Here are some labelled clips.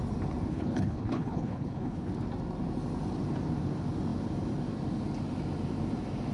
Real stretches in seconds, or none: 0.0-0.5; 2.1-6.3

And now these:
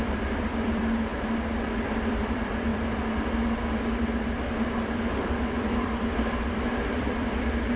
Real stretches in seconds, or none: 1.1-1.9; 2.7-4.6

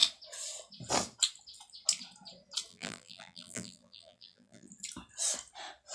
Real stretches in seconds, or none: 0.0-2.7; 4.7-5.9

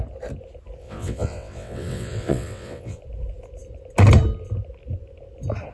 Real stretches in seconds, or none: 0.0-0.8; 3.0-5.7

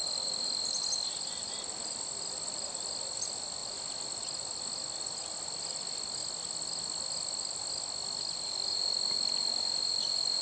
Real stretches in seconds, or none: 0.0-10.4

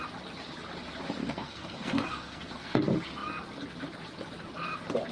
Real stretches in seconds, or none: 0.0-1.2; 2.8-5.1